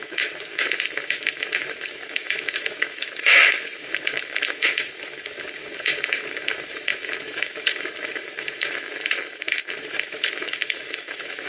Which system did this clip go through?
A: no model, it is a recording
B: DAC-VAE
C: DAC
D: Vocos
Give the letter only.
B